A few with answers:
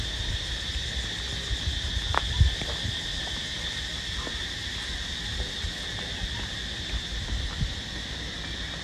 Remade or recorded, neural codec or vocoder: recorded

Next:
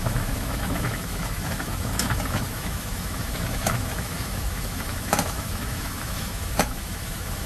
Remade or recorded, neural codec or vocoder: remade, autoencoder, DAC-VAE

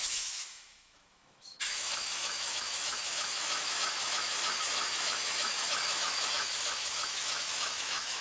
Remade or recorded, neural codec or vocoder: remade, autoencoder, DAC-VAE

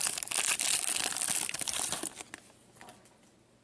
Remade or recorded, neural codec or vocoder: recorded